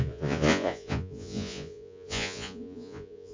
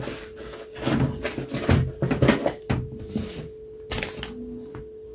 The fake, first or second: first